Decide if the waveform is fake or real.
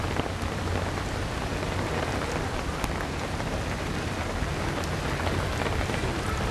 real